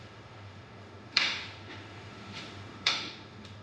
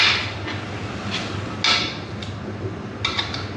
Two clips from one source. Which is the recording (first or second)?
second